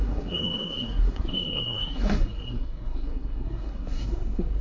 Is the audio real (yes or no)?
no